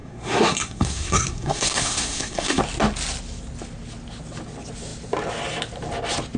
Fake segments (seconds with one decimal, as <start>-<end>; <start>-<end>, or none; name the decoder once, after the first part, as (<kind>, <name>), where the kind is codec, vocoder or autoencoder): 0.0-2.6 (codec, SNAC)